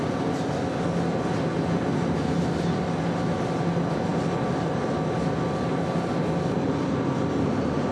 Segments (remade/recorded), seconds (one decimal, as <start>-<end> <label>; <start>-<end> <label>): 0.0-7.9 recorded